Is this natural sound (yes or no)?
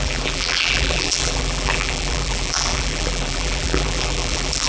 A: no